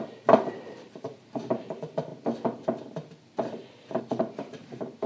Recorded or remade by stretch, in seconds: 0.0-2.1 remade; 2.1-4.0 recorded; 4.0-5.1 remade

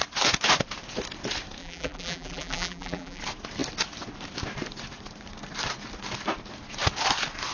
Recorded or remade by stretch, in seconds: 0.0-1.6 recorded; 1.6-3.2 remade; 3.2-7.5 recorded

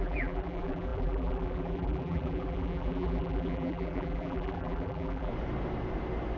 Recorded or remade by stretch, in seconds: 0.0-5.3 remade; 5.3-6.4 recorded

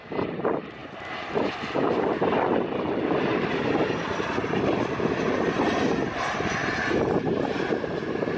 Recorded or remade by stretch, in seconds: 0.0-0.8 recorded; 0.8-4.8 remade; 4.8-8.4 recorded